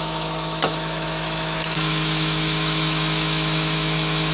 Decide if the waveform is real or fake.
fake